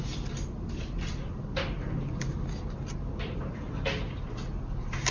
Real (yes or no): yes